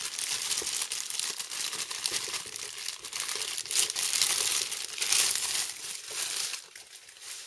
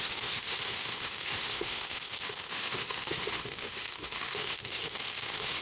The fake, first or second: second